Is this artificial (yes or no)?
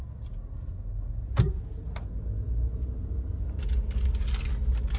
no